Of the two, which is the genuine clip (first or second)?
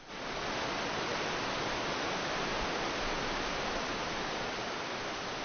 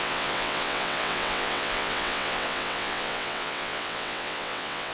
first